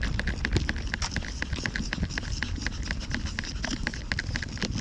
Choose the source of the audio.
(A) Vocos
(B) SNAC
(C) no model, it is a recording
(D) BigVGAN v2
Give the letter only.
C